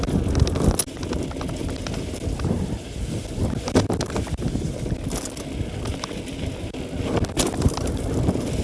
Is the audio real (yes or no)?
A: yes